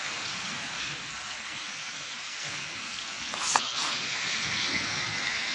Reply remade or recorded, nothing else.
remade